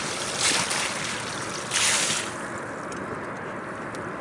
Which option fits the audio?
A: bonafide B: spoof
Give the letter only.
A